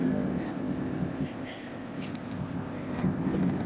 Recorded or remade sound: remade